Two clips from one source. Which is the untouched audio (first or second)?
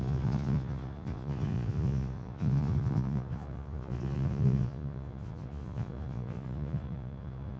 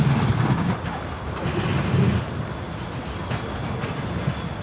second